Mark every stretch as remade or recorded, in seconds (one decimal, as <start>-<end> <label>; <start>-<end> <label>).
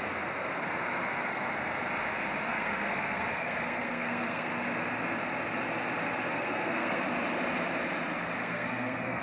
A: 0.0-2.5 recorded; 2.5-4.5 remade; 4.5-6.3 recorded; 6.3-7.0 remade; 7.0-8.4 recorded; 8.4-9.2 remade